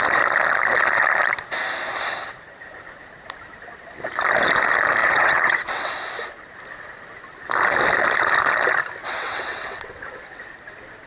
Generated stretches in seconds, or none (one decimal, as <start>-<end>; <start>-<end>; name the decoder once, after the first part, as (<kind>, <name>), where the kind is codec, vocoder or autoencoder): 5.0-5.9 (vocoder, WaveNeXt); 9.0-10.4